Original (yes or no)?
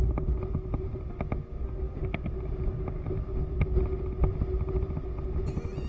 yes